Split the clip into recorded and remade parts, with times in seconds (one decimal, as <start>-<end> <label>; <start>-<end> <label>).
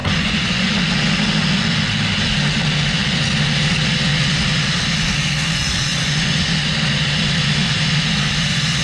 0.0-0.7 remade; 0.7-5.9 recorded; 5.9-6.4 remade; 6.4-8.8 recorded